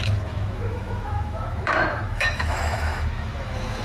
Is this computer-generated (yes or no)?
yes